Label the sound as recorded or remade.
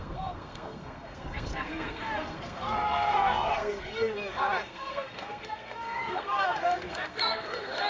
remade